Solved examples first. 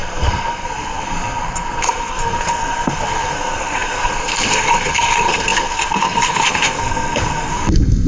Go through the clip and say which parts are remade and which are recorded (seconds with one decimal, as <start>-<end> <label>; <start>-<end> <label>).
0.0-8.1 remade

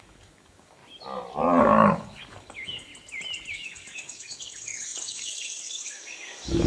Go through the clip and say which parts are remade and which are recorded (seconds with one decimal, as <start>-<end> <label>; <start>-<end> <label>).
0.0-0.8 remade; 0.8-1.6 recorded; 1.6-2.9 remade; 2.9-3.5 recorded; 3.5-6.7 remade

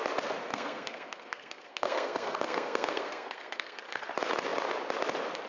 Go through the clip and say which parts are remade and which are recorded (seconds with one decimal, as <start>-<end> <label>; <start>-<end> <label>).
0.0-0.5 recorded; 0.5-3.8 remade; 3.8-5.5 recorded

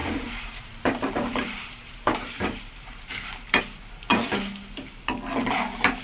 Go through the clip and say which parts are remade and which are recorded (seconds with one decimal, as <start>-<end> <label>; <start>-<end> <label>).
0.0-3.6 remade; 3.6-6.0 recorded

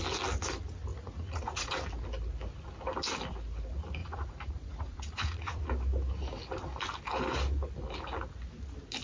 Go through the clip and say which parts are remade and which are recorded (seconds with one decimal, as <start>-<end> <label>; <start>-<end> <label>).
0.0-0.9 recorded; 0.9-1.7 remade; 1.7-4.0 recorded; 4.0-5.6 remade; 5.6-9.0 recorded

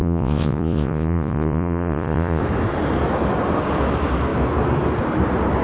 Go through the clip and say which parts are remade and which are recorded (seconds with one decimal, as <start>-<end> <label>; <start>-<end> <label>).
0.0-2.4 remade; 2.4-5.6 recorded